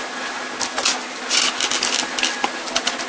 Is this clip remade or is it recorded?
recorded